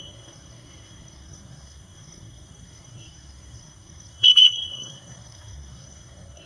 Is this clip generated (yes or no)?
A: yes